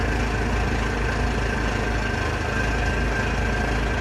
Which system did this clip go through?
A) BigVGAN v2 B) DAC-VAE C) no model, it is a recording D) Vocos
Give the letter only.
C